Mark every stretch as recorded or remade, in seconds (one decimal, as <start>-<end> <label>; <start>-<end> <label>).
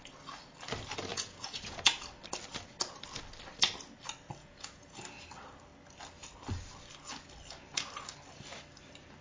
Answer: 0.0-1.1 recorded; 1.1-1.9 remade; 1.9-4.4 recorded; 4.4-5.0 remade; 5.0-9.2 recorded